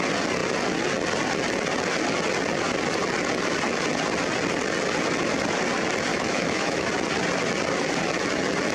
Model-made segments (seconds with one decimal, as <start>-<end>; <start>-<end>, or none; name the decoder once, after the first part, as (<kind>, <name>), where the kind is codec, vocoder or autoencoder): 6.1-6.9 (autoencoder, DAC-VAE)